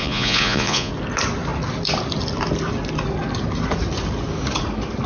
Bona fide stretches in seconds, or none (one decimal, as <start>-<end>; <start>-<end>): 0.9-5.1

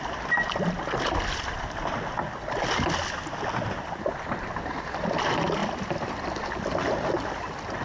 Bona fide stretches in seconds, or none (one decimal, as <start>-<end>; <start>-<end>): 0.0-7.8

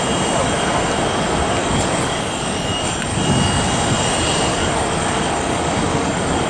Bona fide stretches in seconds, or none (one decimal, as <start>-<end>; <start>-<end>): 0.0-1.6; 3.2-4.5

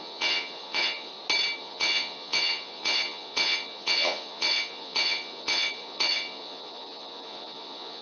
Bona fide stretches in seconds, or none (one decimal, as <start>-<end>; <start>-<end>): 1.1-1.6

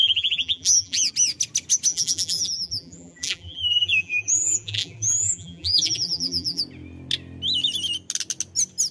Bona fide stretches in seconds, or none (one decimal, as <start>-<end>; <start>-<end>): 1.1-1.9; 6.6-8.9

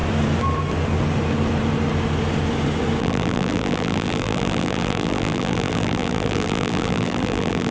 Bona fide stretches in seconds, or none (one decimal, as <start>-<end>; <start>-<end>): 0.0-3.0